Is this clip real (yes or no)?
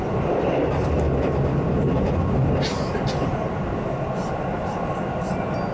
yes